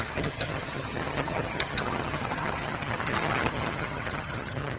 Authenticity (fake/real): fake